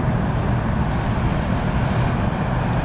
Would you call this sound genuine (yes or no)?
yes